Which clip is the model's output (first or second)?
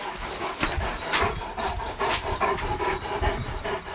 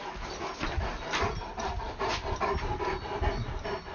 first